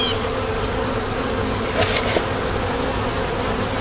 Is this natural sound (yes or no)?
yes